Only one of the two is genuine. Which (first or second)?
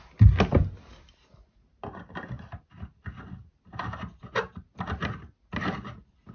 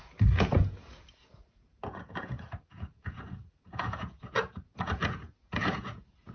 first